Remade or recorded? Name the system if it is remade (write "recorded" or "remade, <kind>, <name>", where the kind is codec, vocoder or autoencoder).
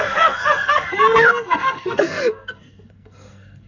remade, codec, SNAC